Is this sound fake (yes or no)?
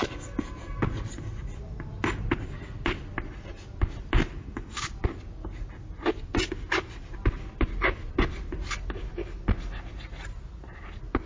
no